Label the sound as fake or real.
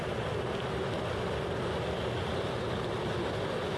real